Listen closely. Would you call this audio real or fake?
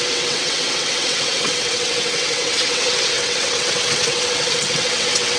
fake